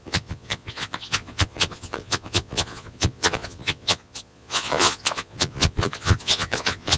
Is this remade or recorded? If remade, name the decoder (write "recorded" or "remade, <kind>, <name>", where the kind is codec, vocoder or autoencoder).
remade, vocoder, Vocos